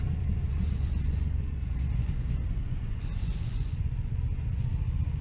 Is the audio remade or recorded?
remade